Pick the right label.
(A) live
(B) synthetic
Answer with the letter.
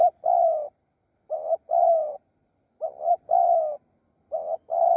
A